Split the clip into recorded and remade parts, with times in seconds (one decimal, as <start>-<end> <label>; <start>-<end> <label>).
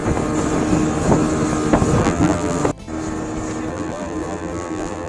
0.0-2.0 recorded; 2.0-2.6 remade; 2.6-3.7 recorded; 3.7-5.1 remade